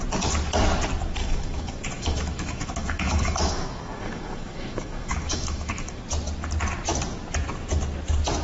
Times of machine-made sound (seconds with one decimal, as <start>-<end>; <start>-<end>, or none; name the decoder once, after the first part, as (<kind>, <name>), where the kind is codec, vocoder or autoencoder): 1.2-6.0 (autoencoder, DAC-VAE)